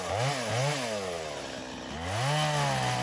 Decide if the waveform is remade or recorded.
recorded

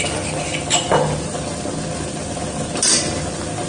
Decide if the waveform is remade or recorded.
recorded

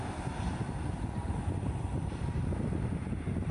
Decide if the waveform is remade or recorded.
remade